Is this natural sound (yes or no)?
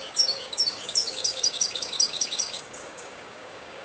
no